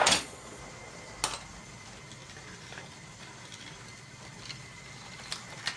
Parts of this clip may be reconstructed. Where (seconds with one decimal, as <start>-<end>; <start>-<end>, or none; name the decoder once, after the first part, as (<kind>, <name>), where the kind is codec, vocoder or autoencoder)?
0.0-0.6 (vocoder, Vocos)